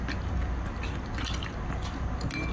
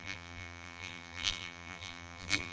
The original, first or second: first